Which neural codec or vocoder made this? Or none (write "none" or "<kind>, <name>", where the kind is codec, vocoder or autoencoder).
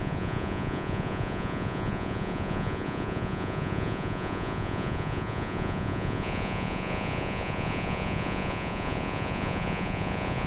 vocoder, Vocos